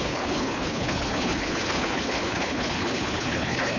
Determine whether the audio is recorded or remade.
remade